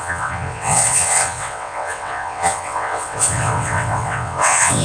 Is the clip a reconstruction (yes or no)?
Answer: yes